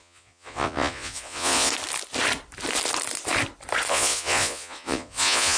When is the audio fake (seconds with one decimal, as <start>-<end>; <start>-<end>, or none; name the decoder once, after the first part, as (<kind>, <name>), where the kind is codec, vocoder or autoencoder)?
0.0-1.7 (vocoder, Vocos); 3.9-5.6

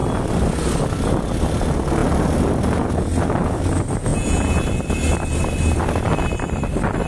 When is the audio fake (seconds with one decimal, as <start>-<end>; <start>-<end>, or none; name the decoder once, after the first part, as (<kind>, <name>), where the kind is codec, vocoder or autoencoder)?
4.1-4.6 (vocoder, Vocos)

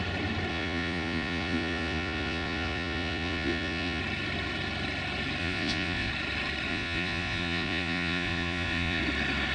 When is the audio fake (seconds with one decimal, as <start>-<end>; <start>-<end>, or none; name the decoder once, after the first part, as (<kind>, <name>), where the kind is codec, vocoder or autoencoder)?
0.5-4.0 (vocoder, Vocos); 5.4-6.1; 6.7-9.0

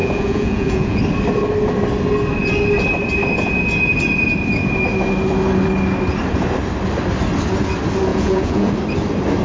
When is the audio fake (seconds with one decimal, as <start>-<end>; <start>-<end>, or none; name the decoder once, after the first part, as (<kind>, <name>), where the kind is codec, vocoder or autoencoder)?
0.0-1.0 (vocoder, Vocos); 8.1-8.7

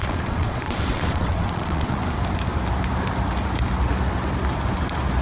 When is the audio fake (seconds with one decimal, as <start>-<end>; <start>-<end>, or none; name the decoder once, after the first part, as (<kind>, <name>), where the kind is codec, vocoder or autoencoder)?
0.0-2.0 (vocoder, Vocos)

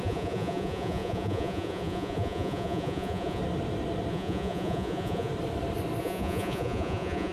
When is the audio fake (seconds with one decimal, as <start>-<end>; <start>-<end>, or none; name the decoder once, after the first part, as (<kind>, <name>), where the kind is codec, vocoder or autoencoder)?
0.0-3.4 (vocoder, Vocos); 4.1-5.3; 6.0-7.3

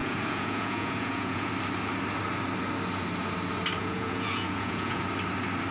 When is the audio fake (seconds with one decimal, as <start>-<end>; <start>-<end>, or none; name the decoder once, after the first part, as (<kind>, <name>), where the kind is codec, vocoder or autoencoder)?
0.0-1.5 (vocoder, Vocos); 3.8-5.0